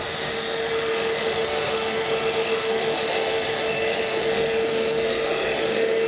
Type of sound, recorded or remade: remade